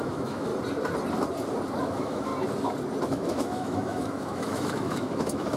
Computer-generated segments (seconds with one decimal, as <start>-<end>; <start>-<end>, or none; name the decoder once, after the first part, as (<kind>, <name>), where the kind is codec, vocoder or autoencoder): 0.0-0.5 (autoencoder, DAC-VAE); 1.8-2.3; 3.0-5.6